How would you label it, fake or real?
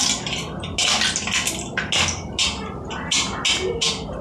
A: real